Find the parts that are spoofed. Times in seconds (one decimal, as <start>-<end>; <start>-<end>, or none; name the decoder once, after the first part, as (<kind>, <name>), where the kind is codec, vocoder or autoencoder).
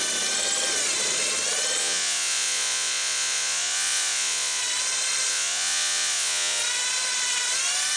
1.8-4.6 (vocoder, Vocos); 5.3-6.6